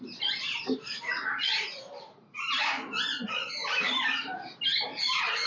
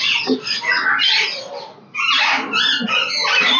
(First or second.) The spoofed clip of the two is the first